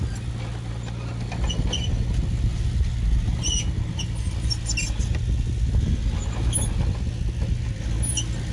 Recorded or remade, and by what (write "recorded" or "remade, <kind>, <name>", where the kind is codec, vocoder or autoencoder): recorded